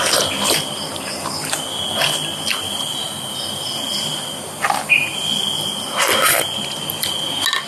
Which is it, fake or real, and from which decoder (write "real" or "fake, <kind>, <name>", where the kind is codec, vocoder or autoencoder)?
real